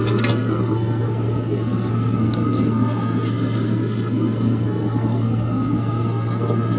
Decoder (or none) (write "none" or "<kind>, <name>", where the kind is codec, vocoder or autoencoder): codec, SNAC